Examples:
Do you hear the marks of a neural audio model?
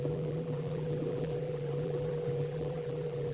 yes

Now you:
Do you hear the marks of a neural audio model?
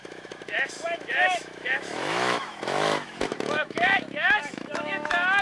yes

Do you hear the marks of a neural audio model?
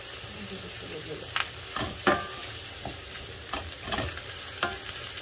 no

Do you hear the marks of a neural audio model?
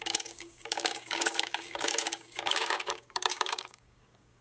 yes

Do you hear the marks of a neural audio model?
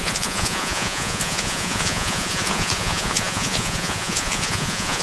yes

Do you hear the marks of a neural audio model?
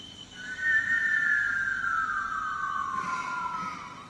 no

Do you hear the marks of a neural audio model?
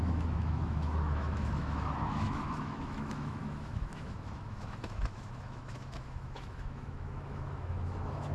yes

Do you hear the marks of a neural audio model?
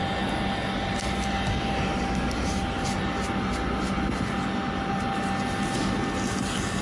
no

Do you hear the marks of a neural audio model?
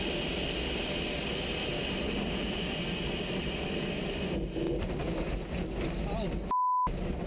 no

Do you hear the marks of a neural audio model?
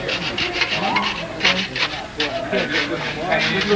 no